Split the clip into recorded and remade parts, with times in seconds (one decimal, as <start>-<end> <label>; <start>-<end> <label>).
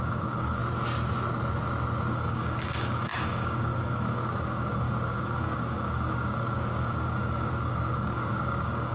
0.0-0.6 remade; 0.6-2.1 recorded; 2.1-8.9 remade